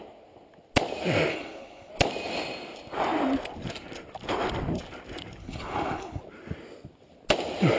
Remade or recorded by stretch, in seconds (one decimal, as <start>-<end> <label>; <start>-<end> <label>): 0.0-1.3 recorded; 1.3-1.9 remade; 1.9-5.4 recorded; 5.4-6.2 remade; 6.2-7.8 recorded